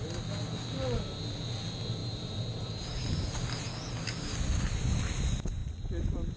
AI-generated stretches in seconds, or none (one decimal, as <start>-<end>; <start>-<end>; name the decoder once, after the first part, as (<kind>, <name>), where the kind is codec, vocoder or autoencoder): 2.0-3.7 (vocoder, BigVGAN v2)